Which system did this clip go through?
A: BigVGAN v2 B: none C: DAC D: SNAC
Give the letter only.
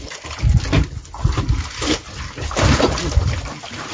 B